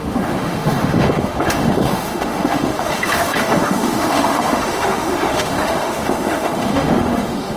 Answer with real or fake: fake